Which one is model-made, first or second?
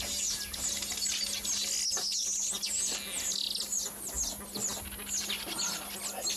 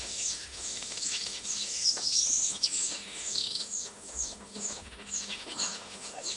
second